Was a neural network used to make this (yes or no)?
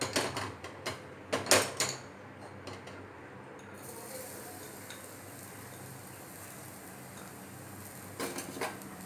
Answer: no